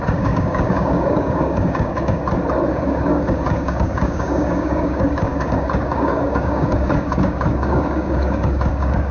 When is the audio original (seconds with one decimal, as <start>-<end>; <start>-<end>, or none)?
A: 2.2-2.7